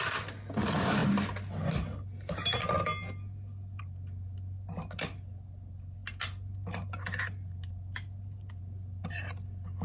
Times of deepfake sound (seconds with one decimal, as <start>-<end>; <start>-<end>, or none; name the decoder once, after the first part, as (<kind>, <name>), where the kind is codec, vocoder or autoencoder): none